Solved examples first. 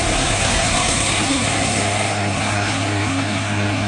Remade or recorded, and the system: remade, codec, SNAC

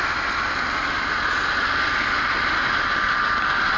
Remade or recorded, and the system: recorded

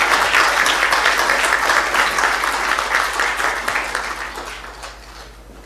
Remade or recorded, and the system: recorded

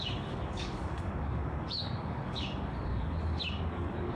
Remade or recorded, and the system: remade, codec, DAC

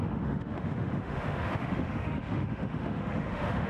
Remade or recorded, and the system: remade, autoencoder, DAC-VAE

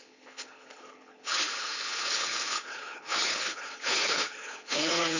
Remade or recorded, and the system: remade, codec, HILCodec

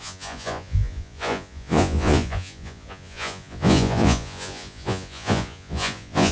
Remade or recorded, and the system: remade, vocoder, Vocos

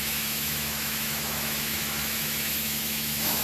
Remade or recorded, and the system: remade, autoencoder, DAC-VAE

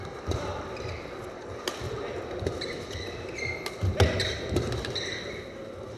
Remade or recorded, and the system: recorded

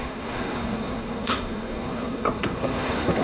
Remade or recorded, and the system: remade, codec, SNAC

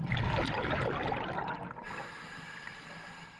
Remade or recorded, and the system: recorded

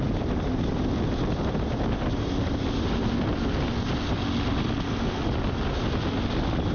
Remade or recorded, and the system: recorded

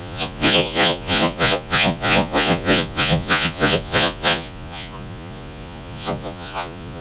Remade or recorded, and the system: remade, vocoder, Vocos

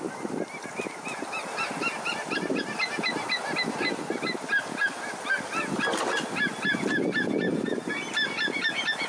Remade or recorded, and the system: recorded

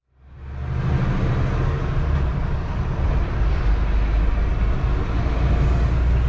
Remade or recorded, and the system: recorded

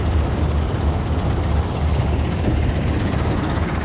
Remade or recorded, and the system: remade, codec, DAC